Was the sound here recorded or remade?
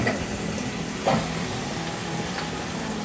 recorded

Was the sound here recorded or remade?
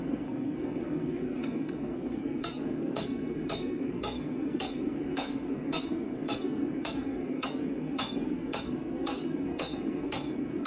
remade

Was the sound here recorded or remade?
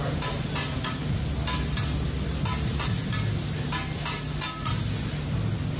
recorded